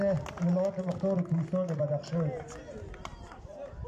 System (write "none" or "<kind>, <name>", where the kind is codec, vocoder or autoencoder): none